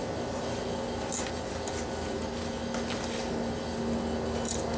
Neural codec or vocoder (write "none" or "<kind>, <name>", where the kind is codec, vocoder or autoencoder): none